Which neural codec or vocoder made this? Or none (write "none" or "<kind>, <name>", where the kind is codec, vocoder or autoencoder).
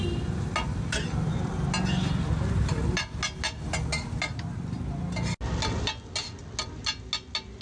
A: none